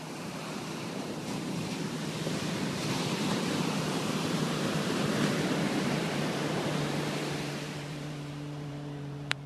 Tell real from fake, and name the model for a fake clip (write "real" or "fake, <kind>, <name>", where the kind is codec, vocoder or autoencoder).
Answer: fake, vocoder, BigVGAN v2